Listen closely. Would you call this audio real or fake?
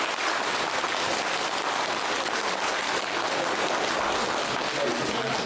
real